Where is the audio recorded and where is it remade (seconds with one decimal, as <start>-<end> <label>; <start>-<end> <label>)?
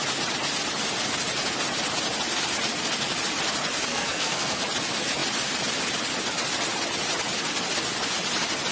0.0-3.9 recorded; 3.9-4.6 remade; 4.6-8.7 recorded